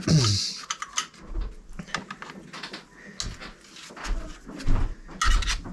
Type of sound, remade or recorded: recorded